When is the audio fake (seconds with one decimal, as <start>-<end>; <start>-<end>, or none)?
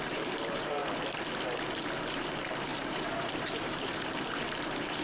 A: 0.0-0.8; 2.0-5.0